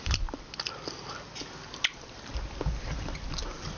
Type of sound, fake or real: real